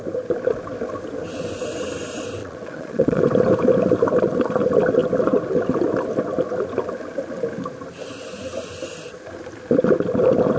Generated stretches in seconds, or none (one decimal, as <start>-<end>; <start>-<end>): 2.4-3.2

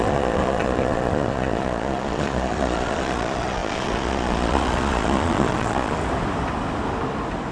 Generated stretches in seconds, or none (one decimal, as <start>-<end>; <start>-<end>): 0.0-6.0

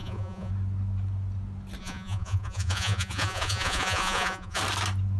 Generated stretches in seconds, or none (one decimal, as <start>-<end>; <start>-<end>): 0.0-0.5; 1.8-4.6